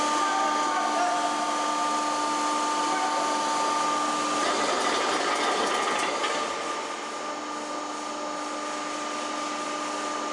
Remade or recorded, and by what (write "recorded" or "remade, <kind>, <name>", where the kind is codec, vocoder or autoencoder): recorded